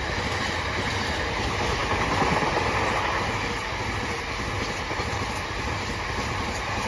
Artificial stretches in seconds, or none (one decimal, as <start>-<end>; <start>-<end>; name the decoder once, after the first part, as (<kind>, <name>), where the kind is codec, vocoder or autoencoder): none